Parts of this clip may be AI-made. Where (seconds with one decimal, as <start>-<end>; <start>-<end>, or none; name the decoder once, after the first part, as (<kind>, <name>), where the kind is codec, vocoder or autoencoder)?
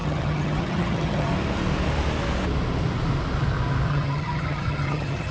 0.0-1.3 (vocoder, HiFi-GAN); 3.9-5.3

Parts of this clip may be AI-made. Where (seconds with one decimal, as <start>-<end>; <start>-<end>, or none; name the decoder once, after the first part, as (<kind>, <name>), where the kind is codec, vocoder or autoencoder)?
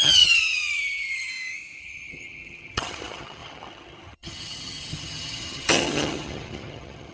0.0-1.3 (vocoder, HiFi-GAN); 1.8-7.1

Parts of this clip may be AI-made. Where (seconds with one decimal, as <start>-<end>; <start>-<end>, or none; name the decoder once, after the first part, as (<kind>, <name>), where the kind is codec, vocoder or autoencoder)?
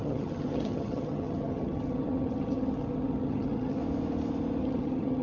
0.0-3.8 (vocoder, HiFi-GAN); 4.6-5.2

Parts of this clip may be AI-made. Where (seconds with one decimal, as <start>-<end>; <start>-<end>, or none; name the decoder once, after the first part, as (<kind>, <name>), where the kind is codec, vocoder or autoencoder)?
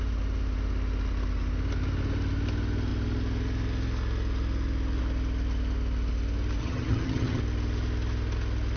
6.6-7.4 (vocoder, HiFi-GAN)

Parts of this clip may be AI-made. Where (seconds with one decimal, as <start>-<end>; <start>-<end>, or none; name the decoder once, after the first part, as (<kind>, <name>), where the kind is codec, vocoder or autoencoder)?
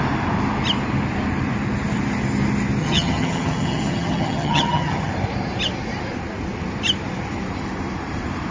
2.8-5.1 (vocoder, HiFi-GAN)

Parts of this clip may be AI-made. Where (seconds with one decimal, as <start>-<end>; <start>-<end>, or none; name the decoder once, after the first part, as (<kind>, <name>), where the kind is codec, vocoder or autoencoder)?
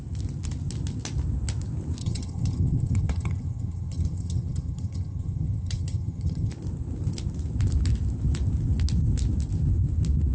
2.0-6.5 (vocoder, HiFi-GAN)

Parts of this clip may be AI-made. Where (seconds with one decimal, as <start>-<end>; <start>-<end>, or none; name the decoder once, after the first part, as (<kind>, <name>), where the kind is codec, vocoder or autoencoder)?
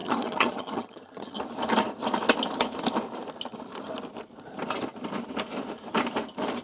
0.0-1.4 (vocoder, HiFi-GAN)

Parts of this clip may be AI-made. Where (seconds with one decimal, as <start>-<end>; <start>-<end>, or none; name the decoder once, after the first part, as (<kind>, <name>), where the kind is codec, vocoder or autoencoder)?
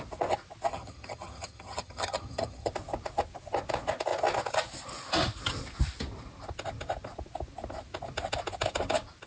0.7-2.7 (vocoder, HiFi-GAN)